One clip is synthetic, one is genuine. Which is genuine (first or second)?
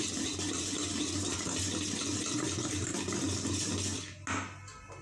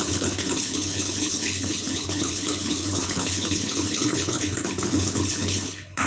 first